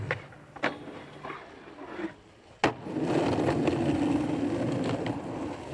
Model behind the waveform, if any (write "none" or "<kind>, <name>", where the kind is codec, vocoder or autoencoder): none